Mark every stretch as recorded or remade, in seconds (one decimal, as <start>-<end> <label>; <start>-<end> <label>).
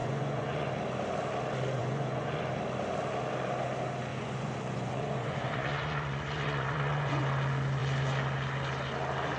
0.0-0.7 remade; 0.7-1.8 recorded; 1.8-2.4 remade; 2.4-4.1 recorded; 4.1-7.2 remade; 7.2-9.4 recorded